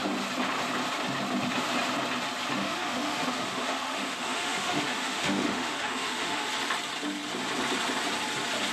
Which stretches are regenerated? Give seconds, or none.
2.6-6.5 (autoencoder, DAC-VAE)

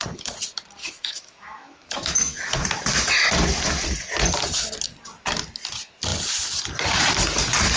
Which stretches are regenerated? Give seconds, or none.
0.8-2.5 (autoencoder, DAC-VAE)

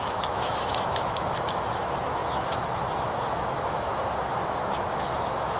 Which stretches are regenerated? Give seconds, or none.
0.0-5.6 (autoencoder, DAC-VAE)

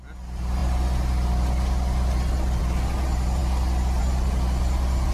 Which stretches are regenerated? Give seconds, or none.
none